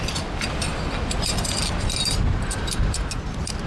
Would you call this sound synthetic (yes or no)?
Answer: no